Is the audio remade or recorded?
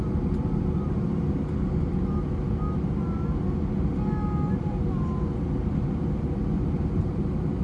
recorded